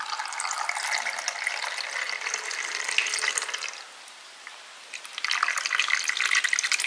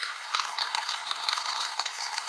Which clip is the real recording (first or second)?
first